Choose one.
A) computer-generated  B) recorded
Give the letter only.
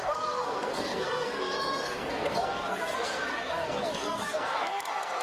A